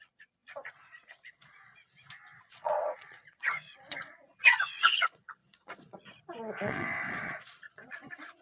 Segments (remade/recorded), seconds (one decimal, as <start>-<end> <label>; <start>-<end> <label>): 0.0-1.8 remade; 1.8-2.5 recorded; 2.5-8.4 remade

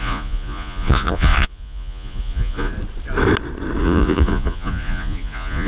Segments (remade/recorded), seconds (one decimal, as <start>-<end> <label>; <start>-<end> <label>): 0.0-2.7 remade; 2.7-3.8 recorded; 3.8-5.7 remade

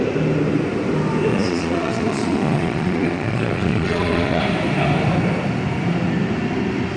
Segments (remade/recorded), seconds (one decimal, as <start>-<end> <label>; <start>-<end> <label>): 0.0-1.3 recorded; 1.3-4.4 remade; 4.4-7.0 recorded

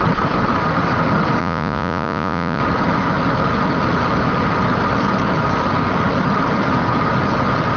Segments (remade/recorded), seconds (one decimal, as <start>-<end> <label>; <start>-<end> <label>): 0.0-1.4 recorded; 1.4-2.6 remade; 2.6-7.8 recorded

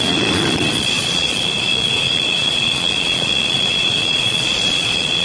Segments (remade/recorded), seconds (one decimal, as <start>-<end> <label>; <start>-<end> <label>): 0.0-5.2 remade

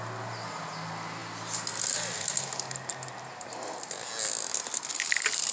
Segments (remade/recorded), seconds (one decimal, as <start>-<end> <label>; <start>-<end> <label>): 0.0-5.5 recorded

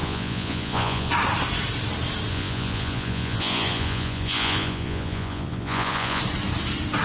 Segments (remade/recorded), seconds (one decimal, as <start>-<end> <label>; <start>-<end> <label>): 0.0-1.1 remade; 1.1-2.3 recorded; 2.3-6.2 remade; 6.2-7.0 recorded